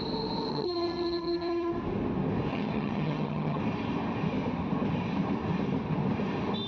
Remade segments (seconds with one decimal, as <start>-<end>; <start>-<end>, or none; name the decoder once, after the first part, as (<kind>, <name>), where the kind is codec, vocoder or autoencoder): 0.5-1.7 (vocoder, HiFi-GAN); 2.5-3.6